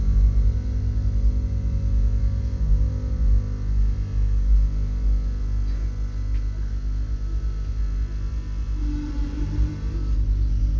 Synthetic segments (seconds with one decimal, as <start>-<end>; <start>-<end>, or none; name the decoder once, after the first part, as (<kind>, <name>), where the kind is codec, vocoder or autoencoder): 8.8-9.7 (vocoder, BigVGAN v2)